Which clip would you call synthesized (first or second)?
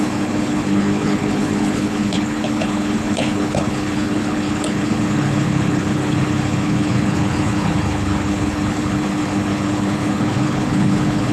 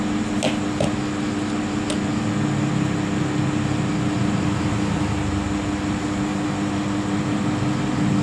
first